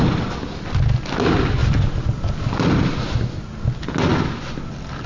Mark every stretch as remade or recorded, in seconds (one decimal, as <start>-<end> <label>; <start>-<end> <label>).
0.0-1.6 recorded; 1.6-2.6 remade; 2.6-5.1 recorded